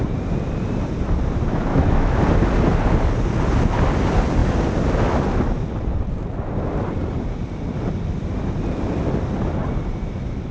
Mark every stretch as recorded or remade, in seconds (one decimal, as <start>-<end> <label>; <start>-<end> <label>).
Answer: 0.0-1.7 recorded; 1.7-2.2 remade; 2.2-10.5 recorded